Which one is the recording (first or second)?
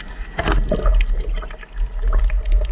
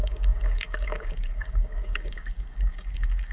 first